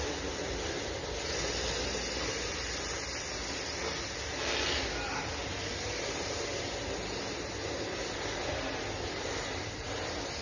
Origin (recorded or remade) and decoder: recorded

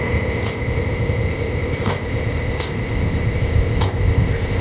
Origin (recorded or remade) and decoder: remade, codec, ZipCodec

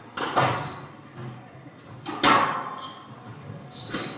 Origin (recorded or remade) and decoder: recorded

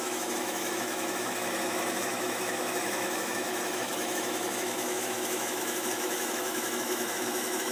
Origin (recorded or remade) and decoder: remade, autoencoder, DAC-VAE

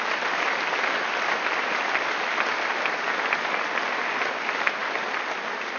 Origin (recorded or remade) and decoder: remade, vocoder, BigVGAN v2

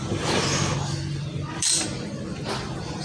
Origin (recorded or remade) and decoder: remade, vocoder, BigVGAN v2